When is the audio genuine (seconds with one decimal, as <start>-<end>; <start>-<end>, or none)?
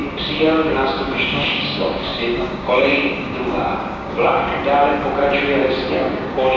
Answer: 0.0-0.7; 4.5-5.9